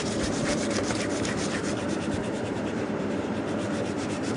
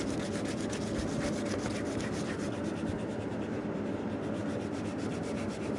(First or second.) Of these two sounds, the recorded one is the second